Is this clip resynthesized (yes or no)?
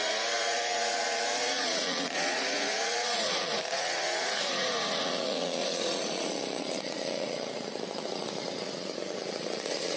yes